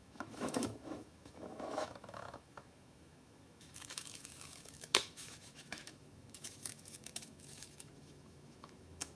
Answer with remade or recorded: remade